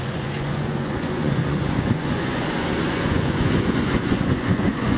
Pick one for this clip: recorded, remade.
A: remade